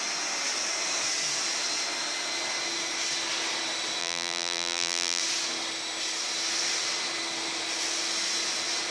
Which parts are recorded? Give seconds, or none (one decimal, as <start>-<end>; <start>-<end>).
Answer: 0.0-4.0; 5.2-8.9